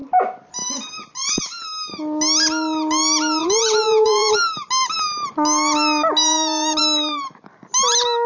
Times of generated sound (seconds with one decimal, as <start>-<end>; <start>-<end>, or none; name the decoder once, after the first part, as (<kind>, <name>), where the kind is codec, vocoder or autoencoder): 3.4-4.5 (vocoder, Vocos)